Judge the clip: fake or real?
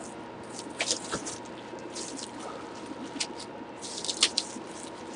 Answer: real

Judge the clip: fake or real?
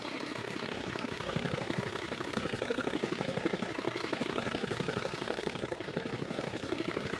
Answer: fake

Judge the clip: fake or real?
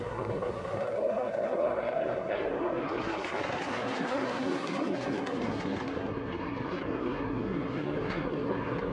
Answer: fake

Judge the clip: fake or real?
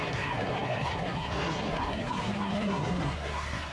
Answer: fake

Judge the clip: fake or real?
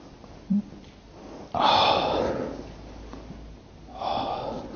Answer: real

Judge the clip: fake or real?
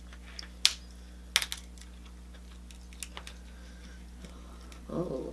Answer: real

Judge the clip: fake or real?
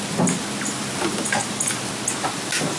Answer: real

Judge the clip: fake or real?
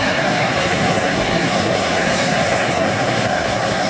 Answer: fake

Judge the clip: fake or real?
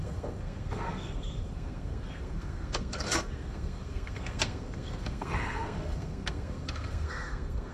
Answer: fake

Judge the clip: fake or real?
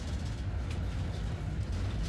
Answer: real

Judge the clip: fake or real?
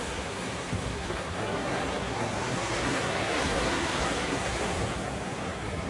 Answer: fake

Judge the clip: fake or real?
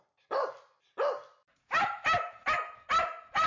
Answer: real